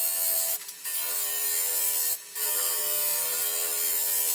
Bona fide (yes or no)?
yes